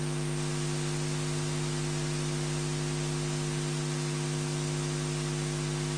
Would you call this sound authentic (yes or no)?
yes